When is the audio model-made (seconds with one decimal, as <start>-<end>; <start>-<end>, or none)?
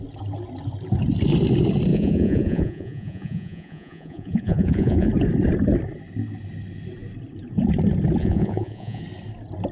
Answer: 1.9-5.1; 8.2-9.0